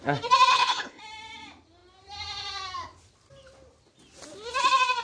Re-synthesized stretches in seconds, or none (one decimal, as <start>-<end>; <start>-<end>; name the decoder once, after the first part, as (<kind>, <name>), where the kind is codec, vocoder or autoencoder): 0.5-1.0 (codec, HILCodec)